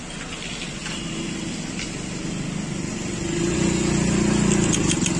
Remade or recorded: recorded